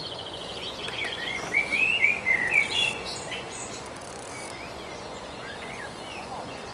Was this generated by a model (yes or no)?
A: yes